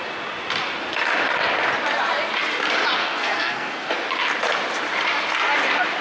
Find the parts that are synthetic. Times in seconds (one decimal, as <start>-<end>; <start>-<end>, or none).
3.0-3.9